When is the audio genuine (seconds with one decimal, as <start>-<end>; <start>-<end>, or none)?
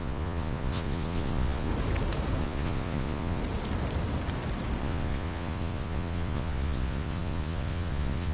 1.7-2.4; 3.4-4.8